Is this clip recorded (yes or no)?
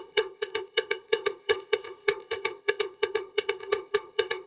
no